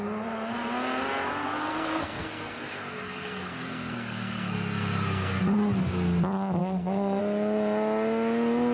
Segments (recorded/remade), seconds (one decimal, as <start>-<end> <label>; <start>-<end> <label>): 0.0-1.7 recorded; 1.7-5.4 remade; 5.4-6.6 recorded; 6.6-7.2 remade; 7.2-8.7 recorded